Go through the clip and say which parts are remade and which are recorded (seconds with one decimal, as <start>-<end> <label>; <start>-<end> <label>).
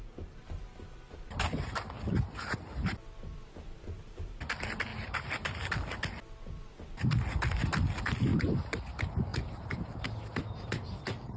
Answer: 0.0-4.9 recorded; 4.9-5.7 remade; 5.7-8.3 recorded; 8.3-8.8 remade; 8.8-11.4 recorded